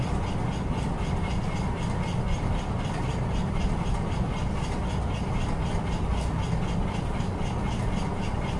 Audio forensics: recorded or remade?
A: recorded